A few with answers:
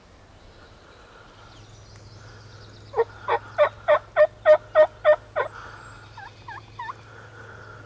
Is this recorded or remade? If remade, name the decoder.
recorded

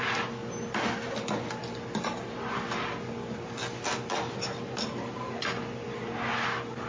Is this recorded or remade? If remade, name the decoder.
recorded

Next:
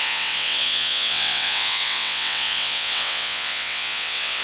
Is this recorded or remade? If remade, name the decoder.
remade, vocoder, WaveNeXt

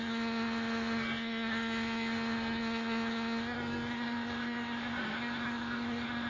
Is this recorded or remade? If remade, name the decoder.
remade, codec, SNAC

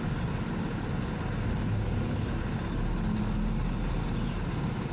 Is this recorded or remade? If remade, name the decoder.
recorded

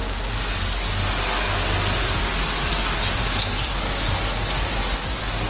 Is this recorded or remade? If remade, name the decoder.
recorded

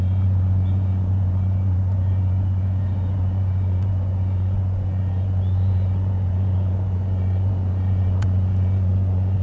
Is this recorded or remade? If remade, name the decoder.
remade, vocoder, Vocos